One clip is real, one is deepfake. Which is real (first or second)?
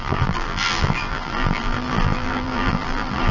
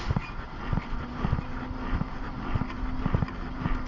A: second